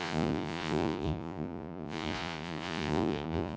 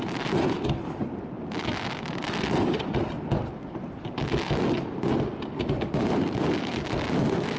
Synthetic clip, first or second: first